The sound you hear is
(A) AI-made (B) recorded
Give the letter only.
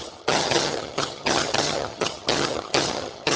A